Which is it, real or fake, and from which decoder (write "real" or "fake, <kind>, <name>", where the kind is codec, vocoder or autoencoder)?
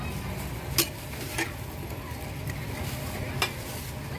real